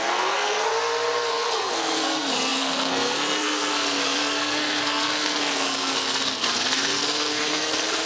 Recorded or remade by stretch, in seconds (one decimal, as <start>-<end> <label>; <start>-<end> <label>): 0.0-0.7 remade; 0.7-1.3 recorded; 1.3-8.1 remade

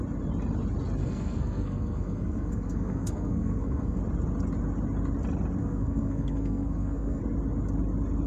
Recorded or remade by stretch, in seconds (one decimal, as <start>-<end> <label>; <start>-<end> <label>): 0.0-1.0 recorded; 1.0-4.0 remade; 4.0-5.6 recorded; 5.6-7.2 remade; 7.2-8.3 recorded

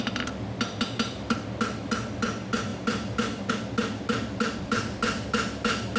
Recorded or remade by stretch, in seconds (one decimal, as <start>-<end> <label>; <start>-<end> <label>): 0.0-6.0 recorded